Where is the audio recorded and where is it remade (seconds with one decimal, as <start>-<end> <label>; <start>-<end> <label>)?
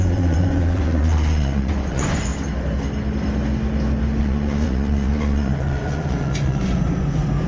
0.0-2.3 remade; 2.3-4.2 recorded; 4.2-7.5 remade